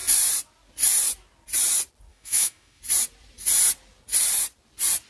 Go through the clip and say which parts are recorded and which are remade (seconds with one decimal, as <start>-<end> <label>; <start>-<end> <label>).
0.0-2.1 recorded; 2.1-2.8 remade; 2.8-5.1 recorded